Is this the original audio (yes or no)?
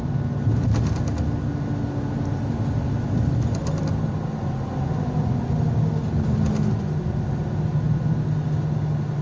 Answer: yes